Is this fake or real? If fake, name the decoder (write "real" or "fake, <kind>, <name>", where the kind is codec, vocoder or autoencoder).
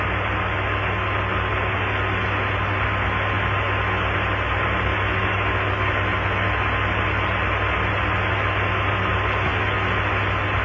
real